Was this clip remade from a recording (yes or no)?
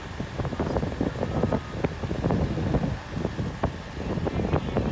no